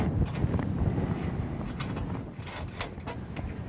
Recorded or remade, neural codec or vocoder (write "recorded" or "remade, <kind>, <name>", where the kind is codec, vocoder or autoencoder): recorded